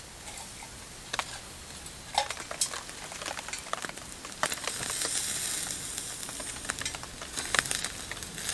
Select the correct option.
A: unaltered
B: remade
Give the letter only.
A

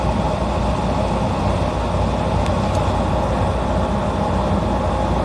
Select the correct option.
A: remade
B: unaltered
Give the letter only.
B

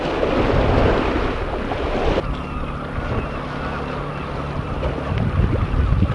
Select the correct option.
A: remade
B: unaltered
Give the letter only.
B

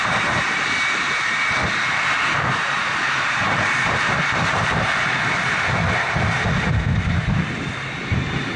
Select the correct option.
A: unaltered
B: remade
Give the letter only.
B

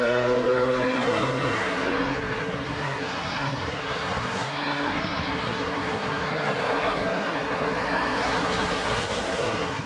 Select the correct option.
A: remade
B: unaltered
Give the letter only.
A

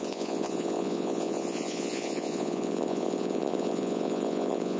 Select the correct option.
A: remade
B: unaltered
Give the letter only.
A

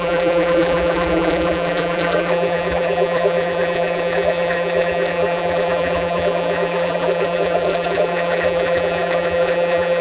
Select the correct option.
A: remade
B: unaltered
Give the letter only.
A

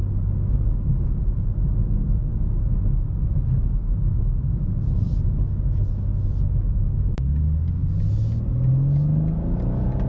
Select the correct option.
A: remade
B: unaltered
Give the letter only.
B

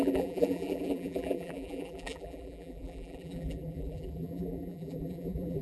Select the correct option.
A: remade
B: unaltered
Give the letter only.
A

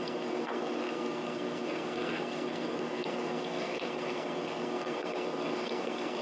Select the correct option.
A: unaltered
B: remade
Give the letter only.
B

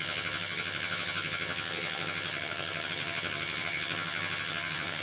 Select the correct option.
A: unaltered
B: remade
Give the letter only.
B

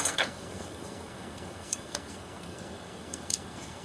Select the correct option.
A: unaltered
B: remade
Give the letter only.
B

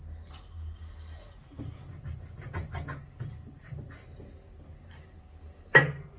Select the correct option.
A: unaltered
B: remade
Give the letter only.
A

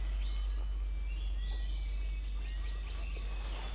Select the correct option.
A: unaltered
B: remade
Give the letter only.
A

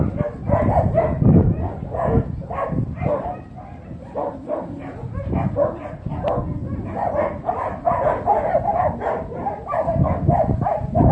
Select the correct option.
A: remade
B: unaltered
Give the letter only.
B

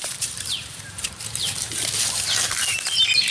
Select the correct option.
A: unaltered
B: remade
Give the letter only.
B